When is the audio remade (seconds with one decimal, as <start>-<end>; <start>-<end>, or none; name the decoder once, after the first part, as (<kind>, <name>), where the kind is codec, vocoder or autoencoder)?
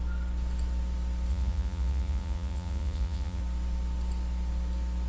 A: 1.3-3.4 (vocoder, Vocos)